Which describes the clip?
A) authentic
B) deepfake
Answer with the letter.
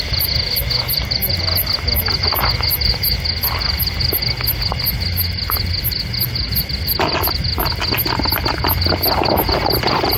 A